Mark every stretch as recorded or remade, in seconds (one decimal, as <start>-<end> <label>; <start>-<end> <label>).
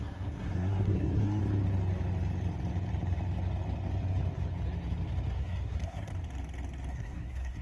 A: 0.0-1.4 remade; 1.4-5.3 recorded; 5.3-6.1 remade; 6.1-6.9 recorded; 6.9-7.6 remade